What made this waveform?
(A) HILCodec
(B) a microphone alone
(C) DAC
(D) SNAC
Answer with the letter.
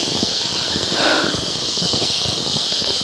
D